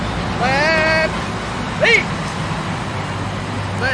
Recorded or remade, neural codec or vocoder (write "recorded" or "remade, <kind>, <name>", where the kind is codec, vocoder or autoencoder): recorded